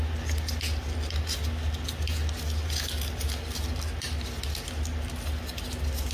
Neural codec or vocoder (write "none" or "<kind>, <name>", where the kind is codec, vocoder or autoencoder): none